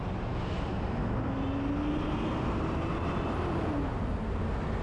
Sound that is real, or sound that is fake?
real